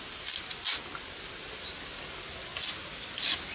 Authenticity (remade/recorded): recorded